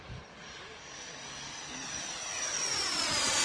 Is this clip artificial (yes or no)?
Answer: no